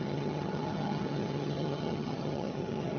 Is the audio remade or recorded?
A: remade